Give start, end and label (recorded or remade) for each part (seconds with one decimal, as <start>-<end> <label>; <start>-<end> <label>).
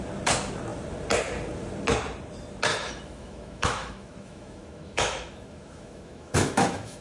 0.0-2.7 recorded; 2.7-7.0 remade